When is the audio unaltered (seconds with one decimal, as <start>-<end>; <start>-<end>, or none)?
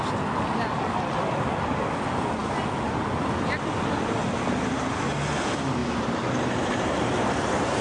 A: 0.0-4.2; 5.2-5.8